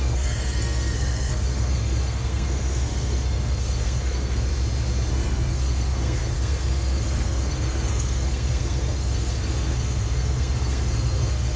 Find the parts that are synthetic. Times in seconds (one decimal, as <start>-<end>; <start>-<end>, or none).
0.0-4.5; 5.1-11.6